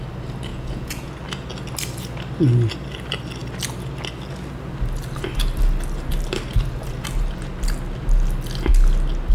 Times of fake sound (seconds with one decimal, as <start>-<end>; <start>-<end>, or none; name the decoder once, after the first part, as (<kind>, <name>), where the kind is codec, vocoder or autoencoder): 0.5-1.1 (vocoder, Vocos)